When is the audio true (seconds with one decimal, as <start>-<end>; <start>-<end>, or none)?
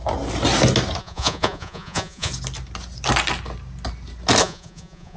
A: 0.0-1.0; 2.3-4.4